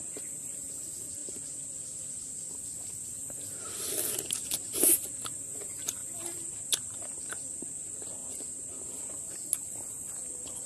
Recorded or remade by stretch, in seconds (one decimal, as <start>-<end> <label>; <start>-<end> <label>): 0.0-10.7 recorded

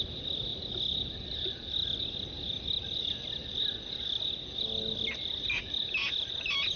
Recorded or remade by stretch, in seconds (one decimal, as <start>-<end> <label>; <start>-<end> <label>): 0.0-6.8 recorded

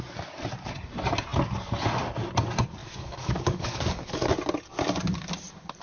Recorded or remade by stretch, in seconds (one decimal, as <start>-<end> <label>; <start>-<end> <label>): 0.0-2.8 recorded; 2.8-4.3 remade; 4.3-5.8 recorded

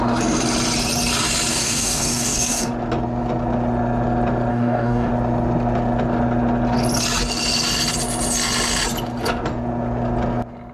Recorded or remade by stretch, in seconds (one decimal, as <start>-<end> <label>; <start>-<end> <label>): 0.0-1.5 recorded; 1.5-2.7 remade; 2.7-4.5 recorded; 4.5-5.1 remade; 5.1-10.7 recorded

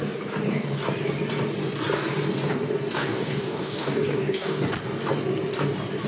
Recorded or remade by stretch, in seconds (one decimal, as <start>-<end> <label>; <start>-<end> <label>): 0.0-3.0 recorded; 3.0-4.6 remade; 4.6-6.1 recorded

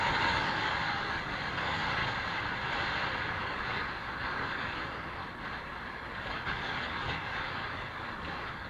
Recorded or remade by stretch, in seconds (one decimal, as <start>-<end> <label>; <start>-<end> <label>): 0.0-2.0 remade; 2.0-3.4 recorded; 3.4-5.2 remade; 5.2-5.9 recorded; 5.9-8.7 remade